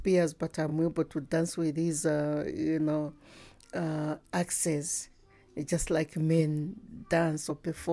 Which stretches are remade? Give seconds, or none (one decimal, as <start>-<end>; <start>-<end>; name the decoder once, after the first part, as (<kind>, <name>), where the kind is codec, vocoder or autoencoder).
none